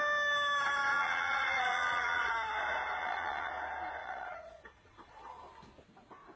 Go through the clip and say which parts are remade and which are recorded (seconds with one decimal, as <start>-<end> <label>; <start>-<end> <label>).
0.0-0.9 recorded; 0.9-2.3 remade; 2.3-3.0 recorded; 3.0-3.5 remade; 3.5-4.0 recorded; 4.0-5.3 remade; 5.3-6.4 recorded